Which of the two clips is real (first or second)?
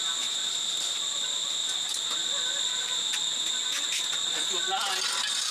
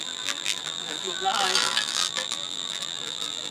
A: first